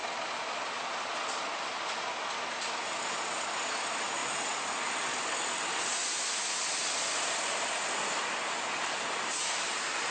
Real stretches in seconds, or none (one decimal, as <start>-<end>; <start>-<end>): 0.0-10.1